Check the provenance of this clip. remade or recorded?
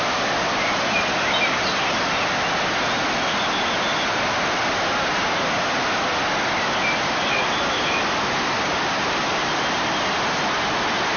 recorded